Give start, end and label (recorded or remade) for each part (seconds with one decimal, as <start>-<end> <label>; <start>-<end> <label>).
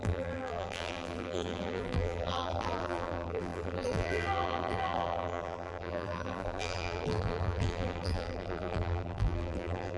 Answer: 0.0-10.0 remade